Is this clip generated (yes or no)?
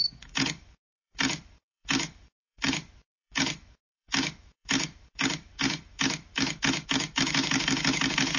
yes